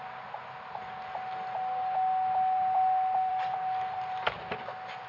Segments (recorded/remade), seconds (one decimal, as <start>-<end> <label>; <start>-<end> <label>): 0.0-5.1 recorded